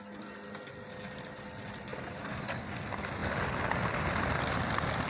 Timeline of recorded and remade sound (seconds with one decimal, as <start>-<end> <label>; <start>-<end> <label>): 0.0-5.1 recorded